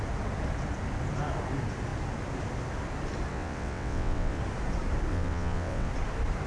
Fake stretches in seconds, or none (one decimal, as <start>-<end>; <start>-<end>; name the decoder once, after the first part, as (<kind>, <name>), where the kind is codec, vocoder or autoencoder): 3.3-4.4 (vocoder, WaveNeXt); 5.1-5.9